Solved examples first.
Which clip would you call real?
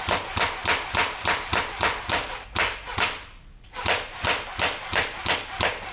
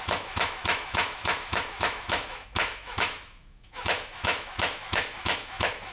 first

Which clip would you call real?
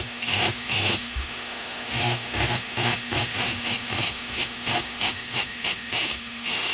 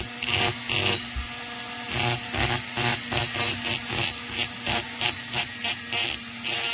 second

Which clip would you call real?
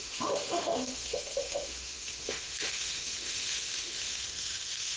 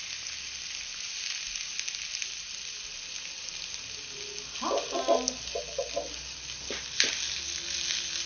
second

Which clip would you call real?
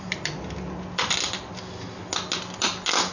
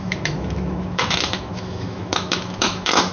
first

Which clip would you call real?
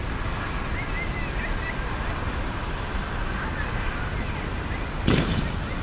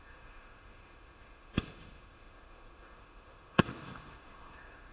first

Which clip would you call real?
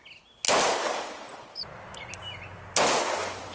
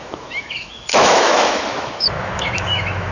first